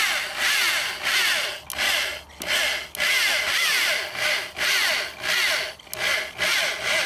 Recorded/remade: recorded